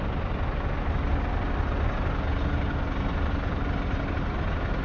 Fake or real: real